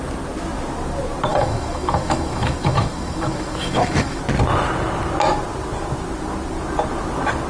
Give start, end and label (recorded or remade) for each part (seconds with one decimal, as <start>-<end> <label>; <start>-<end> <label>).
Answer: 0.0-1.3 recorded; 1.3-4.2 remade; 4.2-7.5 recorded